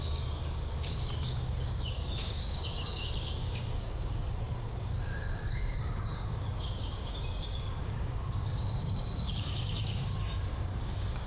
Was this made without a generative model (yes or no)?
no